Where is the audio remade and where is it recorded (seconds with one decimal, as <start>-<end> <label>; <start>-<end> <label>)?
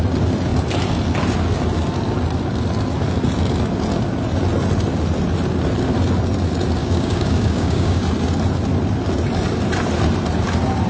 0.0-6.8 recorded; 6.8-8.0 remade; 8.0-10.9 recorded